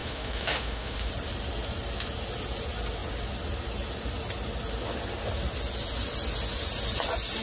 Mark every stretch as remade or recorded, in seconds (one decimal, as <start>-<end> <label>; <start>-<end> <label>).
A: 0.0-1.1 remade; 1.1-7.4 recorded